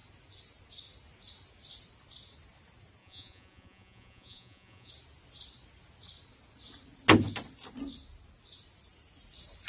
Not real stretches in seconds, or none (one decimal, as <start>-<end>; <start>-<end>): 3.0-4.9